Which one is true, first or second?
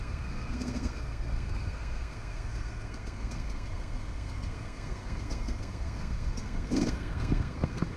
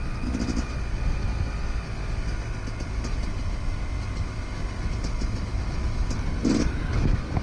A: second